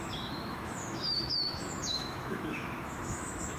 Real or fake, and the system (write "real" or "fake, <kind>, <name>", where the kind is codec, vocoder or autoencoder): fake, autoencoder, DAC-VAE